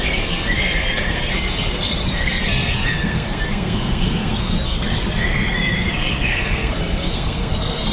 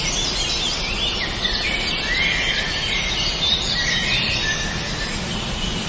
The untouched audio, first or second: second